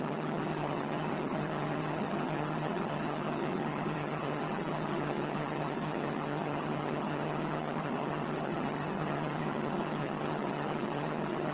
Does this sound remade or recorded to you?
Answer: remade